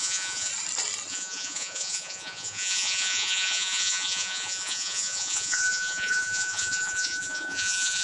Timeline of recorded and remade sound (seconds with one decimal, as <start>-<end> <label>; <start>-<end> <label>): 0.0-0.5 remade; 0.5-1.1 recorded; 1.1-8.0 remade